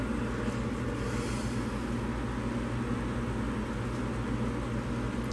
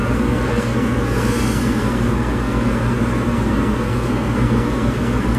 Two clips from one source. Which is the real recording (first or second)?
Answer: first